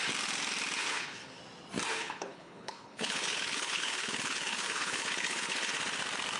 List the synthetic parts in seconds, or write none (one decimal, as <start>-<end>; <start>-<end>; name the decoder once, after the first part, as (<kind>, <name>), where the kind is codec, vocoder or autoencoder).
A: 0.8-1.4 (codec, HILCodec); 1.9-5.7

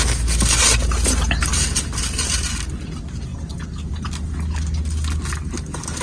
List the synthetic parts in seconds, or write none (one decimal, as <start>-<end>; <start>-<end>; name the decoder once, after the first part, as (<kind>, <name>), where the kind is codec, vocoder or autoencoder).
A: none

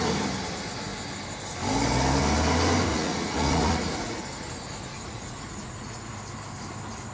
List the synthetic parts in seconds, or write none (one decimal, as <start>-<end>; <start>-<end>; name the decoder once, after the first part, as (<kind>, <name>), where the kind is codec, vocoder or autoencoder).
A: 2.9-4.2 (vocoder, Vocos); 4.9-6.1

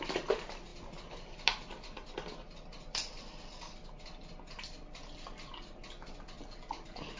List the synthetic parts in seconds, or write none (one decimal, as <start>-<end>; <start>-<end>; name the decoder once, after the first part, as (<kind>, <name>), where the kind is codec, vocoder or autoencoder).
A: none